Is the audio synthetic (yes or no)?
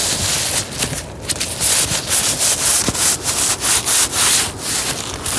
no